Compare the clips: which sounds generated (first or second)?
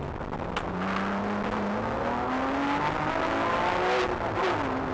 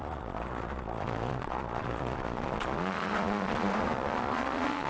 second